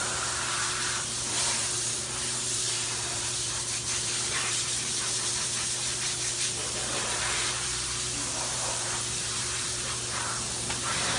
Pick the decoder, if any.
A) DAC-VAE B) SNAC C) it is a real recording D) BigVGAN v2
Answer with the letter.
D